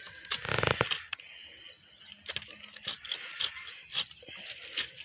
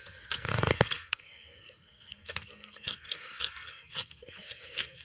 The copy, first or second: second